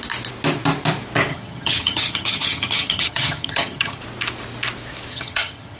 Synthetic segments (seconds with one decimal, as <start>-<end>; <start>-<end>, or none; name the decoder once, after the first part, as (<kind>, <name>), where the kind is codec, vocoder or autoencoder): 1.3-4.0 (vocoder, HiFi-GAN); 5.1-5.8